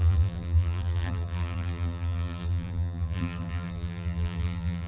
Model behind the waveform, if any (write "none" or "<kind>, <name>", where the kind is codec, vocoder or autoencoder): vocoder, BigVGAN v2